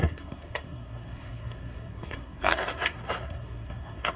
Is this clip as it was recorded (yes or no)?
no